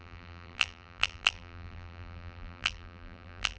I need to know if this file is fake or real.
fake